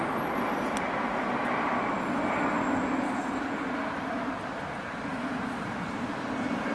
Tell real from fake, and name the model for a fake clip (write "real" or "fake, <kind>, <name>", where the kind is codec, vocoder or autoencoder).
real